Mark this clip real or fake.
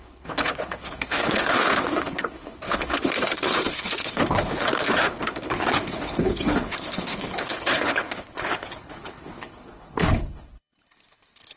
fake